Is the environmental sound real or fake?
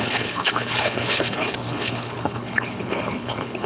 fake